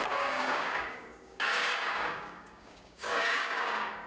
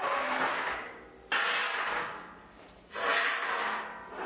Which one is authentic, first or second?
second